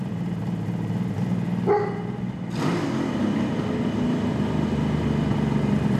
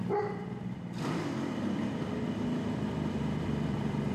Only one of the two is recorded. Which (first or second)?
first